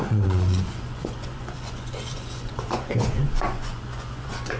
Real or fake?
fake